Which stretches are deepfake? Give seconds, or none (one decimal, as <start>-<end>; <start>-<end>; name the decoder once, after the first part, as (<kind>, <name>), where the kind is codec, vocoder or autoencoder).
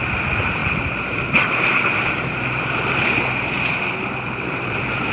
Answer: 0.6-1.1 (vocoder, BigVGAN v2)